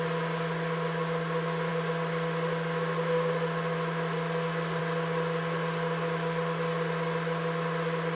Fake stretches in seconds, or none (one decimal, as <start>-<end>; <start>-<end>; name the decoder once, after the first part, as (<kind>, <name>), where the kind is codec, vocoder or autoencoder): none